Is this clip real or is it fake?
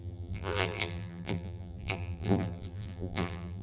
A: fake